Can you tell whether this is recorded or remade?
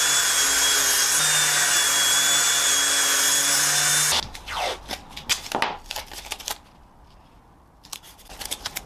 recorded